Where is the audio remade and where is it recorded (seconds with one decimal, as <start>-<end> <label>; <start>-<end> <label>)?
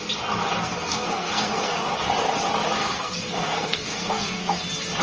0.0-0.6 recorded; 0.6-1.8 remade; 1.8-2.8 recorded; 2.8-4.6 remade; 4.6-5.0 recorded